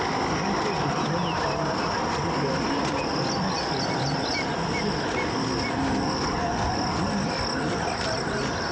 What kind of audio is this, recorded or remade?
recorded